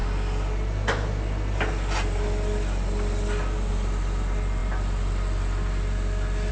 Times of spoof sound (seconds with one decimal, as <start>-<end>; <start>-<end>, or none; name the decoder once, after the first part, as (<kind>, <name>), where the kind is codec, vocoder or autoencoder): 3.7-4.6 (vocoder, BigVGAN v2)